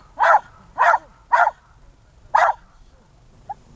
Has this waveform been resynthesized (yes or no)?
no